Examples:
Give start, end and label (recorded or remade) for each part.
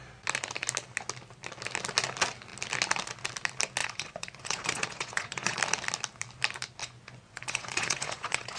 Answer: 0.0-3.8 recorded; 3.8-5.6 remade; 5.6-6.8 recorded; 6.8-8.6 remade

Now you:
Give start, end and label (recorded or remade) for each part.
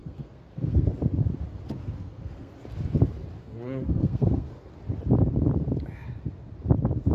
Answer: 0.0-0.9 remade; 0.9-1.8 recorded; 1.8-2.5 remade; 2.5-3.4 recorded; 3.4-4.7 remade; 4.7-7.1 recorded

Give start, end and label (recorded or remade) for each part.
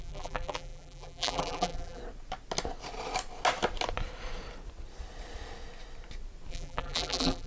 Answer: 0.0-2.0 remade; 2.0-6.5 recorded; 6.5-7.5 remade